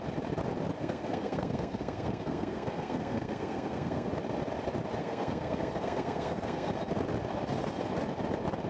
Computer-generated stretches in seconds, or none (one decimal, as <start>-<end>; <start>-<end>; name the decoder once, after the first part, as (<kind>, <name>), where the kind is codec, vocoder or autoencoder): 0.8-4.1 (codec, SNAC); 5.0-6.7